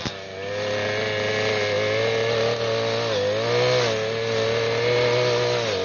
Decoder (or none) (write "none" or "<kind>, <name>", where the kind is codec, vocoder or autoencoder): none